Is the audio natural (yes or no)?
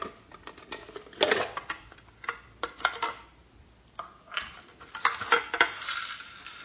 yes